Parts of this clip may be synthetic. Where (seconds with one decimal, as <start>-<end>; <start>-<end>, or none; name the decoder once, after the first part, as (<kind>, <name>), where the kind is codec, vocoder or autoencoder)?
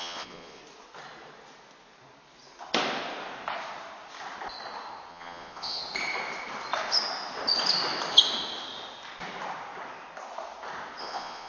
0.0-0.6 (vocoder, Vocos); 5.1-5.8; 11.0-11.5